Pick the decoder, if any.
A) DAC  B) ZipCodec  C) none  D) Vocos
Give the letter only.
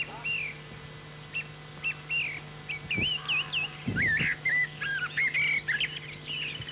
C